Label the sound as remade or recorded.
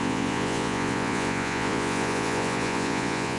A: remade